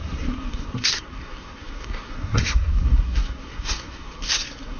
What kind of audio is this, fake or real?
fake